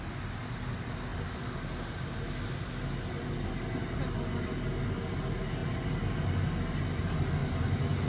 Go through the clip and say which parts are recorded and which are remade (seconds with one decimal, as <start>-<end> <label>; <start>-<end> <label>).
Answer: 0.0-8.1 recorded